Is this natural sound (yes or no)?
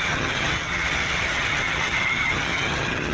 no